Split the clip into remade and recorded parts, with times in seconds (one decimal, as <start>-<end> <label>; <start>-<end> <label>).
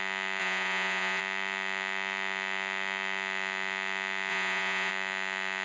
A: 0.0-0.4 recorded; 0.4-1.2 remade; 1.2-4.3 recorded; 4.3-4.9 remade; 4.9-5.6 recorded